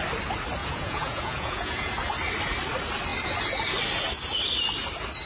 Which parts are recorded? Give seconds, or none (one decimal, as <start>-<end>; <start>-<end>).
0.0-0.6; 1.9-5.3